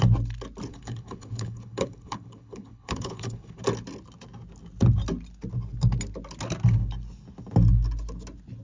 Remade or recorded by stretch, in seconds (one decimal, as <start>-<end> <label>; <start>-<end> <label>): 0.0-0.7 recorded; 0.7-3.6 remade; 3.6-8.6 recorded